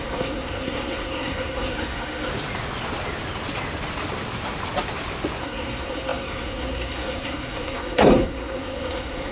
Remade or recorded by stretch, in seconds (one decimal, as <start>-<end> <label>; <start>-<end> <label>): 0.0-2.3 remade; 2.3-5.4 recorded; 5.4-9.3 remade